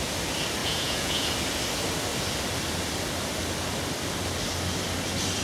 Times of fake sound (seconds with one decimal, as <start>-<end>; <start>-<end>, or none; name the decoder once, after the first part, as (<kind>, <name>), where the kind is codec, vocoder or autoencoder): 0.6-1.3 (vocoder, Vocos)